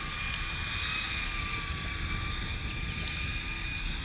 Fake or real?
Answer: real